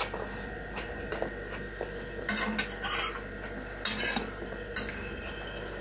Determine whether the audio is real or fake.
real